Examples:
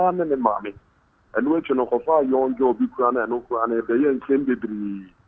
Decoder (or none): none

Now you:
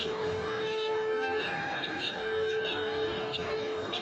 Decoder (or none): codec, DAC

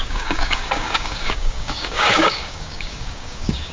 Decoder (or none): codec, DAC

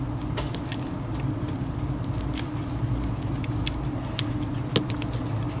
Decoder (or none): none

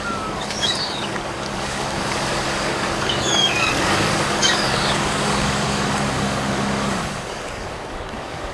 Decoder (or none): codec, DAC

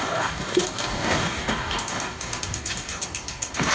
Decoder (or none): codec, DAC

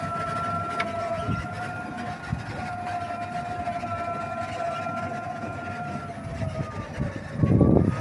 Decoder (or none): none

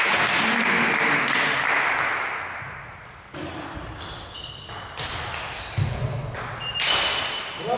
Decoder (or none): none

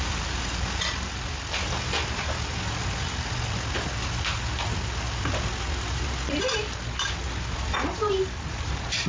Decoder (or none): none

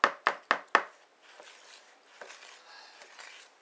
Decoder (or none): none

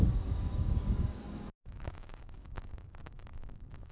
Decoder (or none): codec, DAC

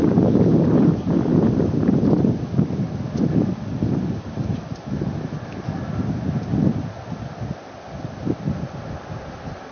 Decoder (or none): none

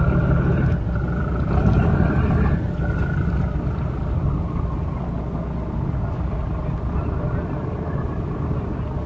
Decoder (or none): none